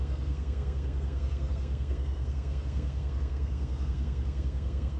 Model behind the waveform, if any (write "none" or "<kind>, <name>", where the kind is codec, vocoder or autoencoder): codec, SNAC